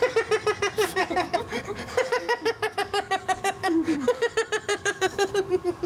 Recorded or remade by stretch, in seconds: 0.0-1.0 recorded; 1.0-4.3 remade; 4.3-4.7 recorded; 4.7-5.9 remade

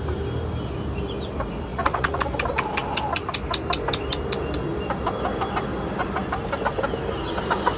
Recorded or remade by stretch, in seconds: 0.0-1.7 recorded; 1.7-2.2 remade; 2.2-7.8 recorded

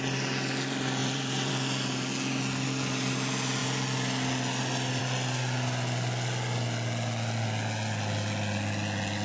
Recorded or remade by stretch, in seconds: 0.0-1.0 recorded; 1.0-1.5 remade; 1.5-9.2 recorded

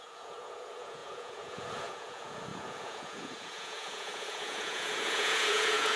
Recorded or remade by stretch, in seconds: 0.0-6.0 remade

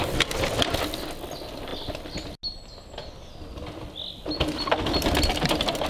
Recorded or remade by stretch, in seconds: 0.0-5.9 recorded

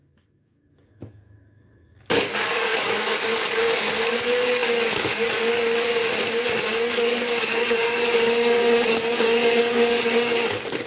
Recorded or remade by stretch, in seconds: 0.0-6.0 remade; 6.0-6.5 recorded; 6.5-10.9 remade

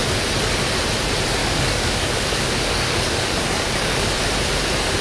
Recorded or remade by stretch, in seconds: 0.0-1.4 recorded; 1.4-4.1 remade; 4.1-5.0 recorded